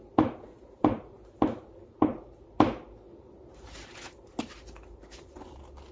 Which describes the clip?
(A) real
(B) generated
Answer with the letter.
B